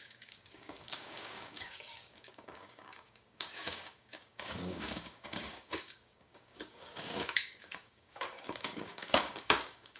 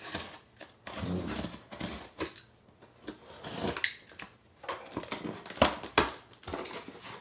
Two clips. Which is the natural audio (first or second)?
second